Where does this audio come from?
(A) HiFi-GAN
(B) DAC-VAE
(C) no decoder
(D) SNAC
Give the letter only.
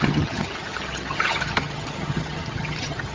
A